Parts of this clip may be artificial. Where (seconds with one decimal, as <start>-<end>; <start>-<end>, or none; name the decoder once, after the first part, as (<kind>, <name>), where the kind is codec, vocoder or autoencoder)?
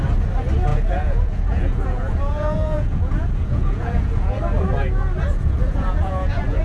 0.7-4.4 (vocoder, Vocos); 5.3-6.6